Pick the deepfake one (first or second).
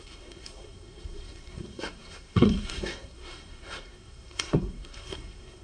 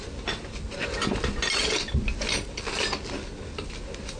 first